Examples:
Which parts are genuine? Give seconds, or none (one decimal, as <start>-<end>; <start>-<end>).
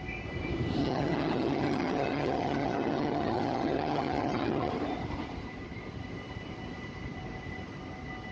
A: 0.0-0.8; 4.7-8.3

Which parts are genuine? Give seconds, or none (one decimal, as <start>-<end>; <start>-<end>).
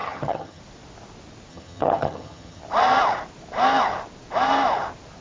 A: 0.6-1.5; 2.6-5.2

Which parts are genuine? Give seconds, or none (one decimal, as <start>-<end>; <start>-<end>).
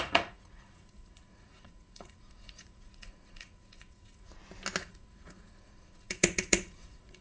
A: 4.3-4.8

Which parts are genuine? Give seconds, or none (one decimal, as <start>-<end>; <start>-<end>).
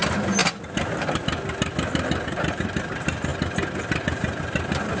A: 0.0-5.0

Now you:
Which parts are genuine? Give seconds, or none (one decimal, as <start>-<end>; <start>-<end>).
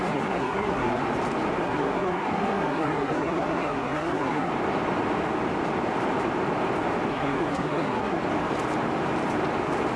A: 1.0-1.6; 4.5-7.1; 8.2-10.0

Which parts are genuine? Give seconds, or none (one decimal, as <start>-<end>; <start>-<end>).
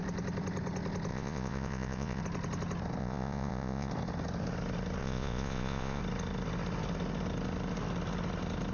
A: 0.0-1.1; 2.2-3.0; 3.9-5.0; 6.0-8.7